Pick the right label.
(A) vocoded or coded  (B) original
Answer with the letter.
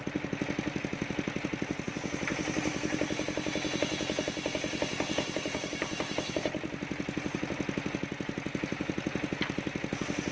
B